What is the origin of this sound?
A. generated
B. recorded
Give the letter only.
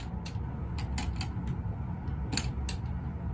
B